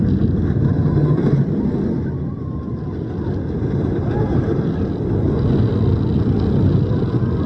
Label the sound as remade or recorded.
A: recorded